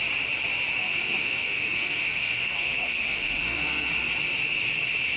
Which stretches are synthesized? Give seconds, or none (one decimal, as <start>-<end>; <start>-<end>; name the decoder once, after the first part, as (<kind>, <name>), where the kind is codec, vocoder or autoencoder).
0.8-3.9 (codec, SNAC)